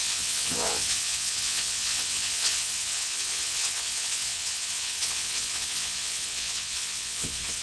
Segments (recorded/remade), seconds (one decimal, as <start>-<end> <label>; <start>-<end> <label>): 0.0-7.6 remade